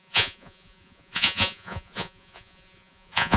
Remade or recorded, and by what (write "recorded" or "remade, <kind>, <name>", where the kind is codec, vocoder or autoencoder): remade, vocoder, Vocos